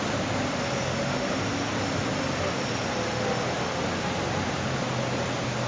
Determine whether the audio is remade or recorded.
recorded